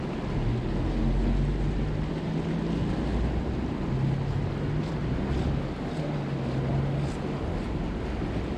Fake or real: real